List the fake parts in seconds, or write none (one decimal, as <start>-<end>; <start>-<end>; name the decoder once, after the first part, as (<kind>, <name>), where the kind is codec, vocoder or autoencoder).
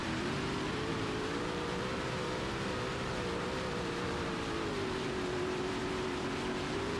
0.0-7.0 (vocoder, BigVGAN v2)